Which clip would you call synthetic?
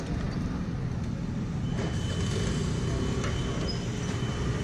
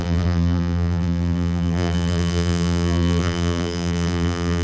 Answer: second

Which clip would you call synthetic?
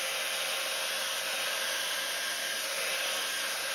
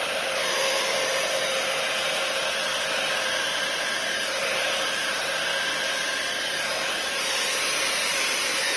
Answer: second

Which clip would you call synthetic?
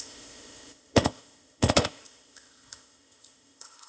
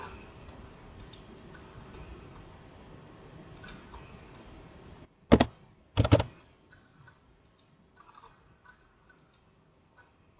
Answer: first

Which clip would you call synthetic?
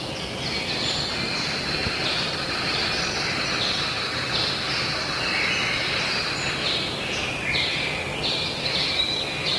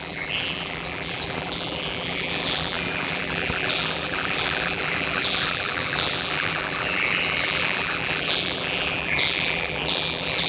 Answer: second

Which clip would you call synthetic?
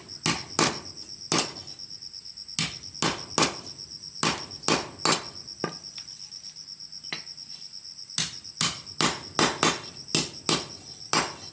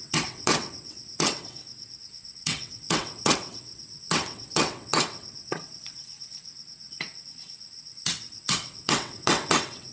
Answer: second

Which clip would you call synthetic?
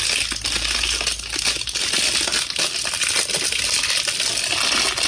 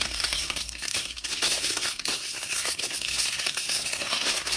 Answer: second